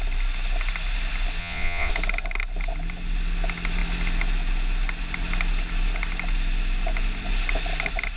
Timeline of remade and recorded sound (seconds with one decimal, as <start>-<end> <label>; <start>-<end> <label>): 0.0-1.4 recorded; 1.4-1.9 remade; 1.9-8.2 recorded